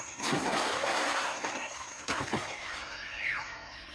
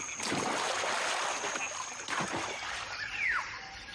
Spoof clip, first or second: first